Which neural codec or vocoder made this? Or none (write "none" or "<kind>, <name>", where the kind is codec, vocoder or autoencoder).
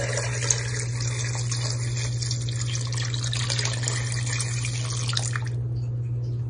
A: none